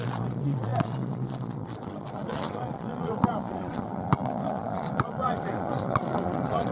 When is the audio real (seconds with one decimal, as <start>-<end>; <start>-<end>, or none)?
none